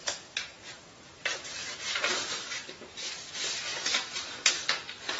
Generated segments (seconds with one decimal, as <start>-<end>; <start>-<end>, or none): 0.0-3.1; 3.7-4.5